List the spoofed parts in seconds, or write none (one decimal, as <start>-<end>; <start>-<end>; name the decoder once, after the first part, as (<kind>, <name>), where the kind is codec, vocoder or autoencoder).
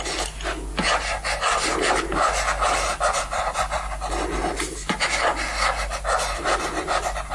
none